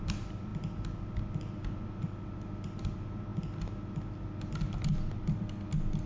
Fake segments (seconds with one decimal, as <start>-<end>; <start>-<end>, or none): none